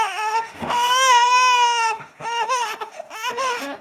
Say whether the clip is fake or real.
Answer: fake